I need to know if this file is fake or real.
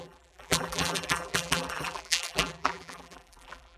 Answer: fake